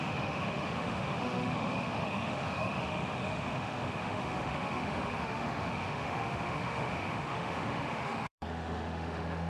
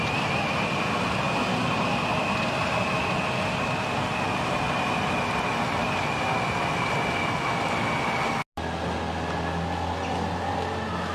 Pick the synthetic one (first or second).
first